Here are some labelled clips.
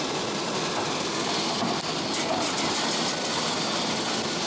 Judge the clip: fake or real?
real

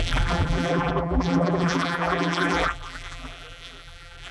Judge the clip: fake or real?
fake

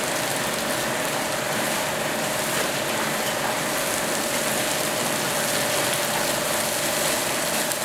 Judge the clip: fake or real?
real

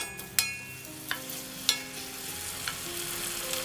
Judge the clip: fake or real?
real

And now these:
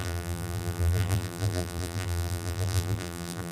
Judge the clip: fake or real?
fake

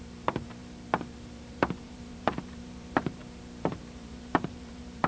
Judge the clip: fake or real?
fake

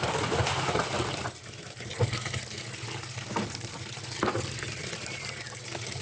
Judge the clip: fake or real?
real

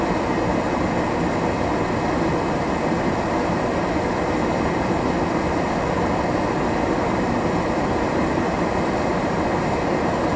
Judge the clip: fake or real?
real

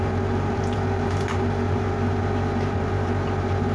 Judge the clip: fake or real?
fake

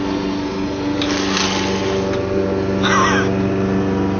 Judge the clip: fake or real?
real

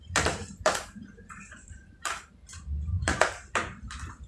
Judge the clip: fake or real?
fake